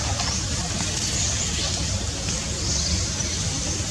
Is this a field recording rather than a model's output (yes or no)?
yes